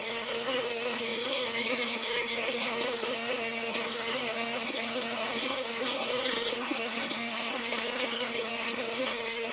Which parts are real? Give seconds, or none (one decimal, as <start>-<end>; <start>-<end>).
none